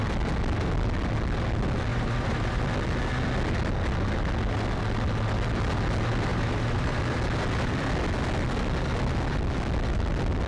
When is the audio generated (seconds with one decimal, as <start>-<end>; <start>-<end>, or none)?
1.9-2.6; 6.3-7.0